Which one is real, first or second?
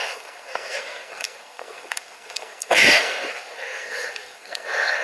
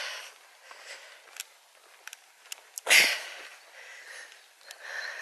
second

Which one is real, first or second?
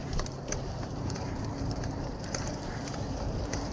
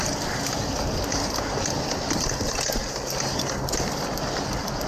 second